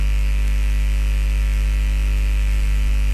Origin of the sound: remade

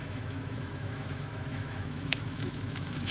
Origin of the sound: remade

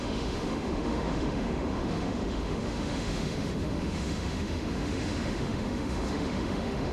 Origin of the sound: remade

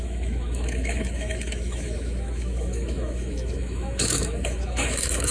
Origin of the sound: remade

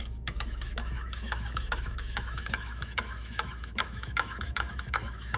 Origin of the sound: remade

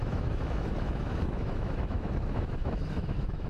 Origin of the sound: remade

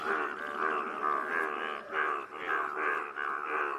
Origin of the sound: recorded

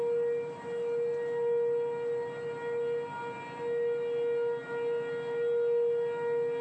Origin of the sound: recorded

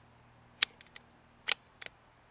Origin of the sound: recorded